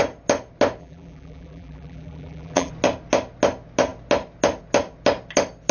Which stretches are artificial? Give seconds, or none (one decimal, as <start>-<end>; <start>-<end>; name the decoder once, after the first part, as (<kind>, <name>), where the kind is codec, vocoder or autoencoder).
0.8-2.7 (vocoder, BigVGAN v2)

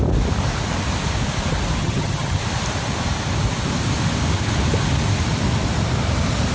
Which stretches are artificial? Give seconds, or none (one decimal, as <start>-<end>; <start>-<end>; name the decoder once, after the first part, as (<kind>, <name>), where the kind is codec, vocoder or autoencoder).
1.8-2.4 (vocoder, HiFi-GAN)